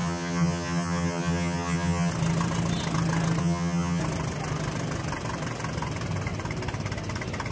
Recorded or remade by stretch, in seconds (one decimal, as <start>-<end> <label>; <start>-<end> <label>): 0.0-2.1 remade; 2.1-3.4 recorded; 3.4-4.0 remade; 4.0-7.5 recorded